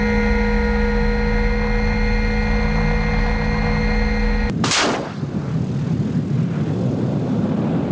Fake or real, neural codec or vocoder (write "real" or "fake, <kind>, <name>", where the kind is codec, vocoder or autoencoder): real